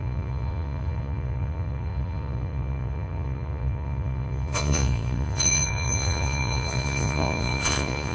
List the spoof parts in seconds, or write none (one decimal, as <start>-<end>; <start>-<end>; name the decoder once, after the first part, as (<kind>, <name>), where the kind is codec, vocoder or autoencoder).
0.0-8.1 (vocoder, Vocos)